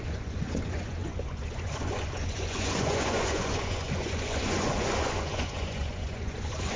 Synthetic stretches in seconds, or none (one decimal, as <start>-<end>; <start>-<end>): 0.0-6.8